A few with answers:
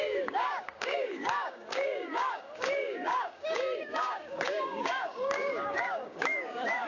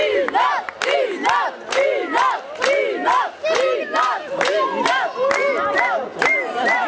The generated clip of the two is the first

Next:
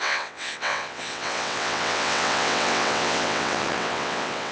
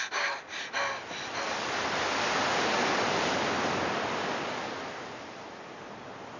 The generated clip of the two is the first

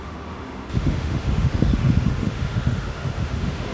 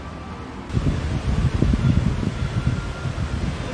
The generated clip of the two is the first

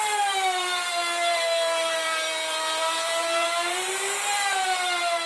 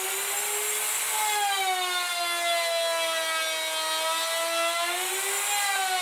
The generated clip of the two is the first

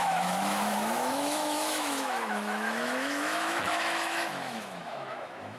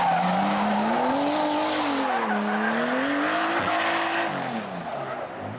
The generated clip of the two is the first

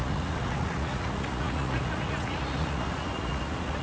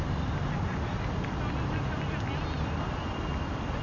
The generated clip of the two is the first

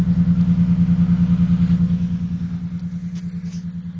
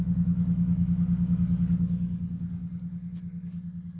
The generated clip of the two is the second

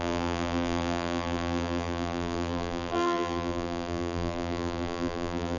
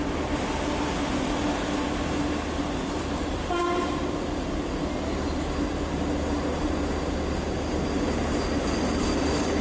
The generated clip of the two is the first